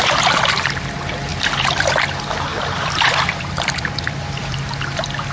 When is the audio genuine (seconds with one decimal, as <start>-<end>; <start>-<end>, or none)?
0.0-1.3; 1.9-2.5; 4.6-5.3